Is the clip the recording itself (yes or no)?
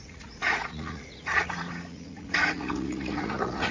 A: no